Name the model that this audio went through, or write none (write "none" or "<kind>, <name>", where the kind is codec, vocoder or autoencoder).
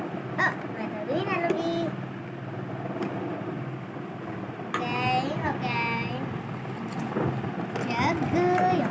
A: none